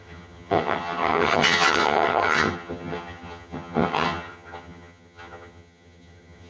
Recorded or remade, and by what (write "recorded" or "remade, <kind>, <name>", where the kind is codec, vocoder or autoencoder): remade, vocoder, HiFi-GAN